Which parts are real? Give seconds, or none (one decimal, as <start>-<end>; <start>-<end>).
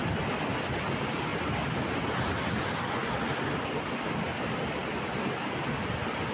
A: 0.0-1.3; 2.0-6.3